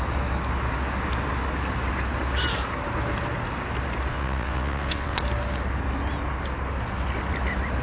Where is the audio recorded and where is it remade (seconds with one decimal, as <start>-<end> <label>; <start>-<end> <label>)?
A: 0.0-4.1 recorded; 4.1-5.2 remade; 5.2-7.8 recorded